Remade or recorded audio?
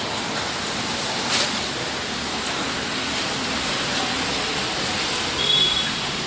remade